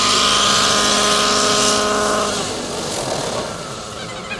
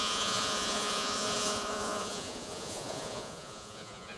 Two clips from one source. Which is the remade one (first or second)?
second